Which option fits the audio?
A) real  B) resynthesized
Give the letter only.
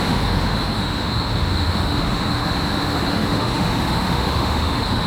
B